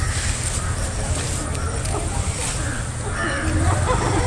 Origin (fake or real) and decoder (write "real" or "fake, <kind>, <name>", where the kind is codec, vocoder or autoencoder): real